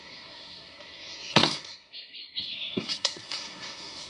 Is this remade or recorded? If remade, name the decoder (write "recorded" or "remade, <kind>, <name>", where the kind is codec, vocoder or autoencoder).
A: remade, codec, SNAC